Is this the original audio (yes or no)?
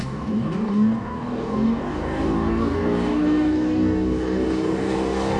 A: no